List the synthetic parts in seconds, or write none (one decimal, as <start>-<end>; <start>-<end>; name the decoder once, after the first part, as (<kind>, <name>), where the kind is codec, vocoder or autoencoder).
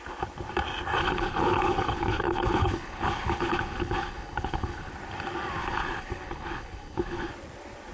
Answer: 1.0-4.9 (codec, HILCodec); 5.6-7.3